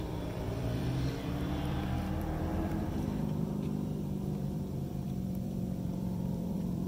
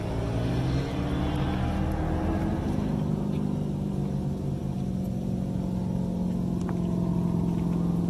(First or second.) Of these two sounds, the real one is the second